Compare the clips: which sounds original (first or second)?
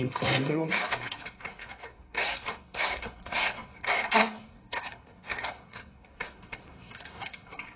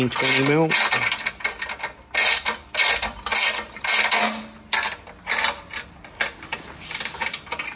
second